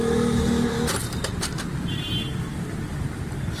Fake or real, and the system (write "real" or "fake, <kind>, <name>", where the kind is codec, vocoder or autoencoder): real